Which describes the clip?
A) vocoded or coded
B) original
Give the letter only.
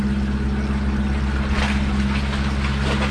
B